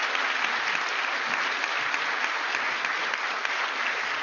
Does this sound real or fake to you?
real